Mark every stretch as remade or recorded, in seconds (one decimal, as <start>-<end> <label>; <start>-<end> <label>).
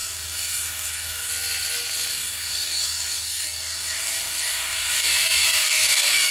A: 0.0-1.3 remade; 1.3-2.1 recorded; 2.1-6.3 remade